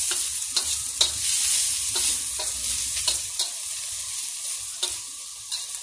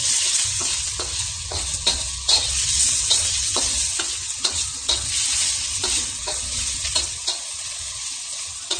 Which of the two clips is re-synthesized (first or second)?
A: second